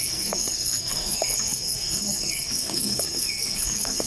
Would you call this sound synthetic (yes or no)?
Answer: yes